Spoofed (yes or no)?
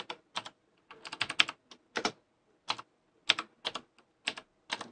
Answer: no